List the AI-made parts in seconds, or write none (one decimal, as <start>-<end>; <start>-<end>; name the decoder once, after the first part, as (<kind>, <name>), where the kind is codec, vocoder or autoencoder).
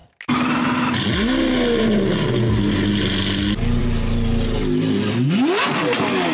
none